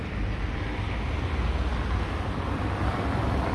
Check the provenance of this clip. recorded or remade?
remade